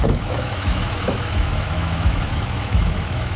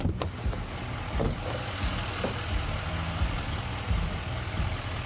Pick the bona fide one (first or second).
second